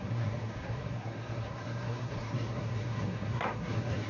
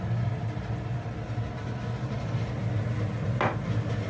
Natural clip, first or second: second